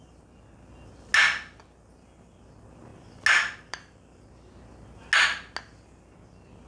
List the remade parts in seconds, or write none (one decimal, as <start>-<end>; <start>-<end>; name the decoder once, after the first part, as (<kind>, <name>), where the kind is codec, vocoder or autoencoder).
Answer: none